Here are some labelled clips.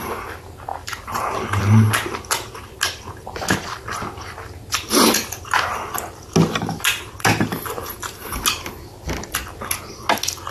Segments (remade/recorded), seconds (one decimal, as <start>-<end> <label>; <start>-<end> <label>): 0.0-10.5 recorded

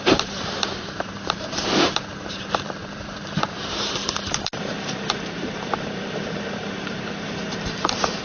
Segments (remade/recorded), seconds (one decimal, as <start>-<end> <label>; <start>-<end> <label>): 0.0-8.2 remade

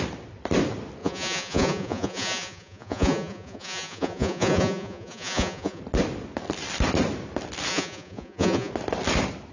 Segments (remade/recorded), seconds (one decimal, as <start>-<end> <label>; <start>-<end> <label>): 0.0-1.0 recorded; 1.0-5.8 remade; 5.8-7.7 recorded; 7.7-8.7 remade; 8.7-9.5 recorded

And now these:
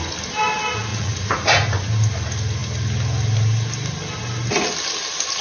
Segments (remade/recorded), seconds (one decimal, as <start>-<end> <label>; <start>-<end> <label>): 0.0-0.9 recorded; 0.9-1.9 remade; 1.9-5.4 recorded

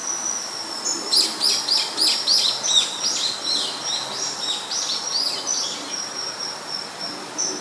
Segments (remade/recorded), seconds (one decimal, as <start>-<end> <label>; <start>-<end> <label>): 0.0-4.1 recorded; 4.1-7.6 remade